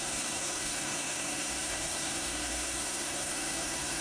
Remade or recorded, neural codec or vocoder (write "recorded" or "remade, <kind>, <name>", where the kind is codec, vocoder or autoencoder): remade, codec, SNAC